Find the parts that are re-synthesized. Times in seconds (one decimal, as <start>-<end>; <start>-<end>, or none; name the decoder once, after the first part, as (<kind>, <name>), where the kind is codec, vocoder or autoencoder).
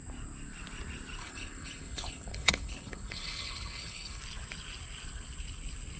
1.2-4.2 (codec, HILCodec)